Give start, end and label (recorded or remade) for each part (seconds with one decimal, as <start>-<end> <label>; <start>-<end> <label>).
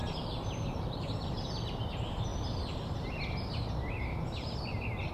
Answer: 0.0-1.8 remade; 1.8-5.1 recorded